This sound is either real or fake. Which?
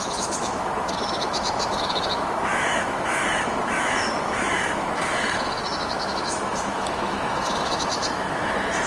fake